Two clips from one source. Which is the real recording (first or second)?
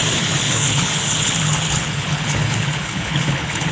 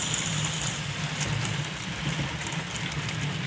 second